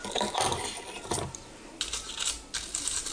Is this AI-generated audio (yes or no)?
no